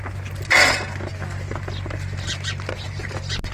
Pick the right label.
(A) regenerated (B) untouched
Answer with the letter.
B